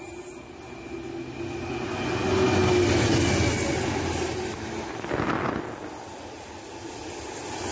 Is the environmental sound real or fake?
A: real